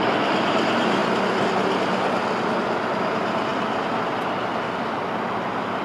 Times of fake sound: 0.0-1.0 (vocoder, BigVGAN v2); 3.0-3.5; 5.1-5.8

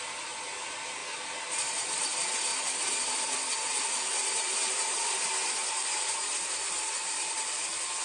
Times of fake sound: 0.0-1.0 (vocoder, BigVGAN v2); 1.6-2.5; 3.1-5.4; 6.5-8.0

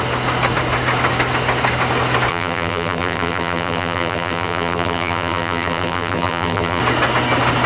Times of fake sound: 2.3-6.8 (vocoder, BigVGAN v2)

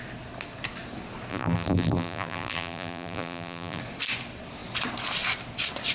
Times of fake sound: 1.3-3.8 (vocoder, BigVGAN v2)

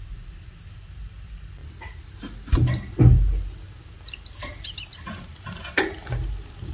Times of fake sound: 1.6-2.5 (vocoder, BigVGAN v2)